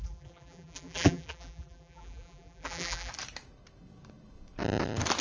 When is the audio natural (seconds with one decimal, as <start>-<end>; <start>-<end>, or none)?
3.1-5.2